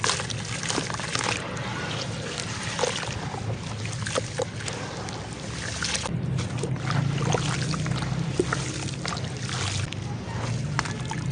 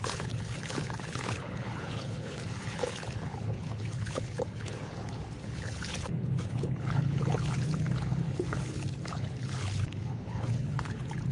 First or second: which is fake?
second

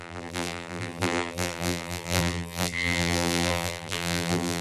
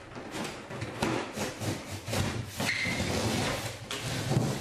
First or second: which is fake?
first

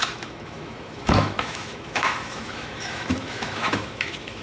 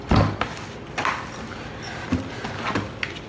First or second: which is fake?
first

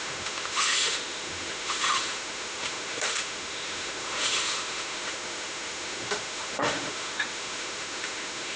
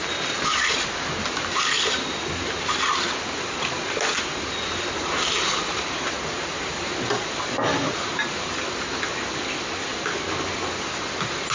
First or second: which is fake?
first